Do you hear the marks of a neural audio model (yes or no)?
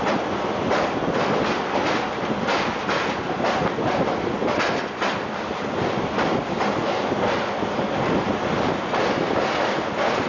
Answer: no